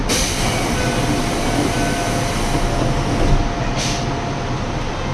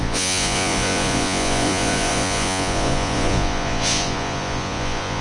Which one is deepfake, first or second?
second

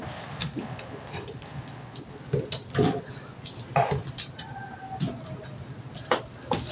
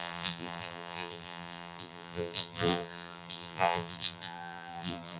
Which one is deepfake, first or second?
second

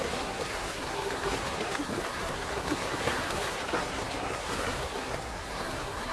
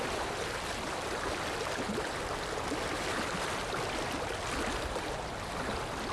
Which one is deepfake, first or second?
first